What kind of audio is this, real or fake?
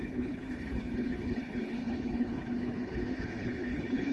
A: fake